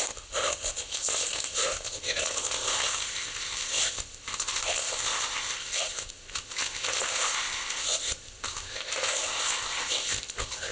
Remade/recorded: remade